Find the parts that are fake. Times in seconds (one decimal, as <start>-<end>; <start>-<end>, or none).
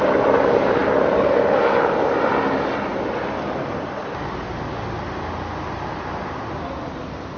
none